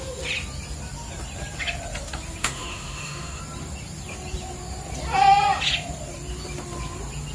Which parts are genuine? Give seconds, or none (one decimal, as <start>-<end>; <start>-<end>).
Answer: 0.0-2.4; 3.4-7.3